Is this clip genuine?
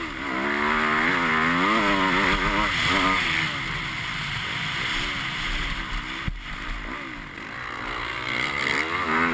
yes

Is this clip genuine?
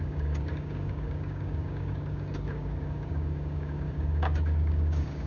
no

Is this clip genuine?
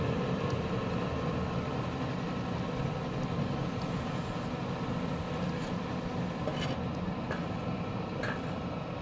yes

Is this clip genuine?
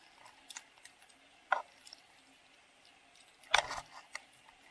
yes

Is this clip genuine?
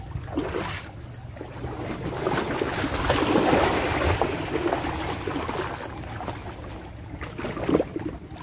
yes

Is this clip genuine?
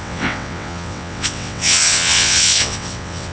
no